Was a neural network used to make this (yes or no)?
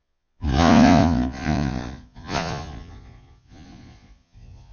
yes